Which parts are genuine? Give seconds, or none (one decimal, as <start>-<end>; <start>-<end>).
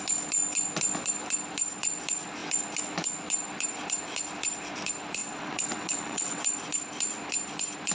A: 0.0-5.2; 6.4-7.9